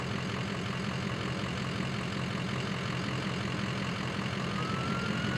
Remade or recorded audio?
recorded